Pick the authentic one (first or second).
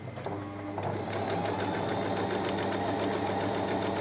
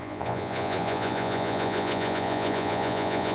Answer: first